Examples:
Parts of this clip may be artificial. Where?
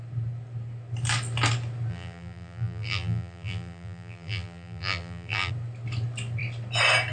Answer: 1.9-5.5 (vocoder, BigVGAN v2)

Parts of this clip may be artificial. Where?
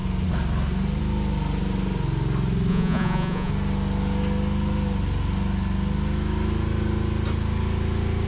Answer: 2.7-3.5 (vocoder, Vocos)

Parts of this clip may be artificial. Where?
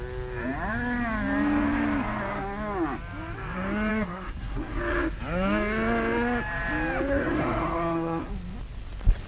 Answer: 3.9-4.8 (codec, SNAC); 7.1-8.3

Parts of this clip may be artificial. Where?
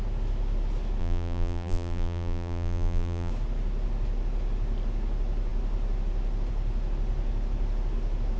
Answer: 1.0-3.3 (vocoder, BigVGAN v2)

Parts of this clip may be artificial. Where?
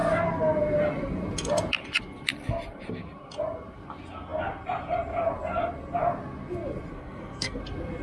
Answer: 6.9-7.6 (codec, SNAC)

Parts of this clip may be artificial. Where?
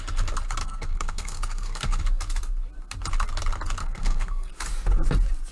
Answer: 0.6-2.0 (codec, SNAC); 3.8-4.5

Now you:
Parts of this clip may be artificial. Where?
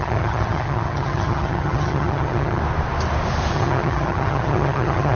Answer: 0.0-2.6 (vocoder, HiFi-GAN); 3.5-5.2